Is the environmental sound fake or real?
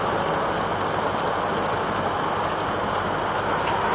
real